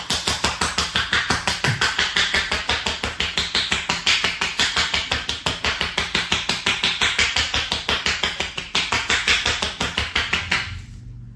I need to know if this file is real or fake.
real